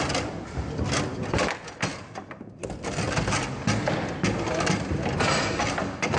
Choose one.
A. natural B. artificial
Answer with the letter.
A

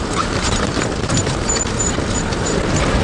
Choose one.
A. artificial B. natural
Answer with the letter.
A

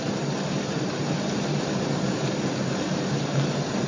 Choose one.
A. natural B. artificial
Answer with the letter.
B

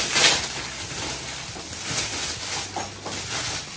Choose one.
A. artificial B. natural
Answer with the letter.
B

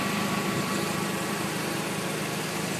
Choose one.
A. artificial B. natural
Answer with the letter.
B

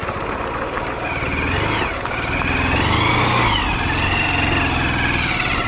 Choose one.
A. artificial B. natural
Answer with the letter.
B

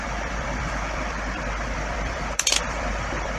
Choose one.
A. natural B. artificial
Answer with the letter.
B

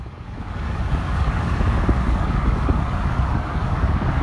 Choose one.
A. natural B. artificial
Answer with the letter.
B